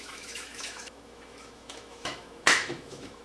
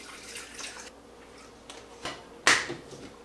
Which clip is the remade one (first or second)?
first